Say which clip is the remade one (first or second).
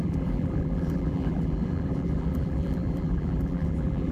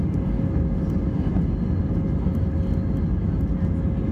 first